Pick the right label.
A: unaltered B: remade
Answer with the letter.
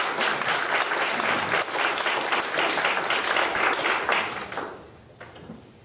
A